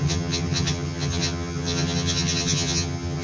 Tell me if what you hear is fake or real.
fake